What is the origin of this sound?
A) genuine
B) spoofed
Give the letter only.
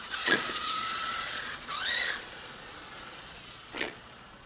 B